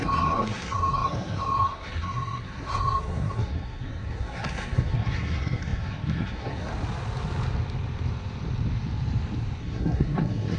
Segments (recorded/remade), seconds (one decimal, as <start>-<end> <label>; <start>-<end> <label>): 0.0-6.7 remade; 6.7-9.6 recorded; 9.6-10.6 remade